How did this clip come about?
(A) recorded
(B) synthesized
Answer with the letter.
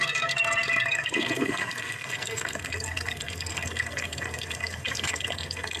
B